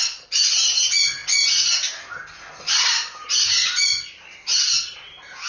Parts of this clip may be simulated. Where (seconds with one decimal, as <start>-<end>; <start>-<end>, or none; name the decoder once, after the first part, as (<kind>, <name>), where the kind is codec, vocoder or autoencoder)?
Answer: 3.6-4.1 (vocoder, Vocos)